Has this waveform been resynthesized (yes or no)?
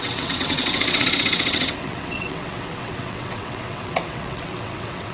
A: yes